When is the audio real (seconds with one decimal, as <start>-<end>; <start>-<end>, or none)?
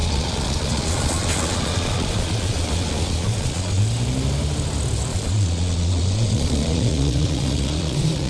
3.8-5.1